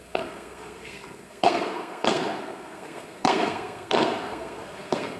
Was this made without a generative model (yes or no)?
no